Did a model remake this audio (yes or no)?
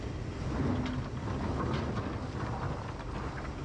no